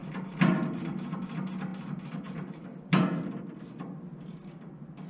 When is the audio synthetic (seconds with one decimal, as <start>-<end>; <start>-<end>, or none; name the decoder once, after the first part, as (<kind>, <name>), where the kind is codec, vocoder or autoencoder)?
none